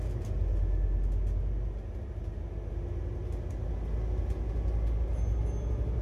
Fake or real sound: real